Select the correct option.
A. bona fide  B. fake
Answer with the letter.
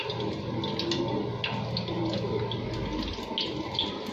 A